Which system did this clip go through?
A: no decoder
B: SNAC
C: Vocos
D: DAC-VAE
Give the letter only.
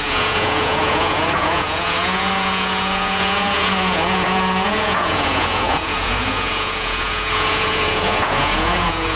C